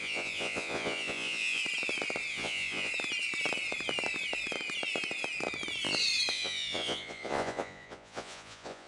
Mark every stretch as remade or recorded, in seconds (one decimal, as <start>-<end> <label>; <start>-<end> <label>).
0.0-1.6 remade; 1.6-2.3 recorded; 2.3-2.9 remade; 2.9-6.3 recorded; 6.3-8.9 remade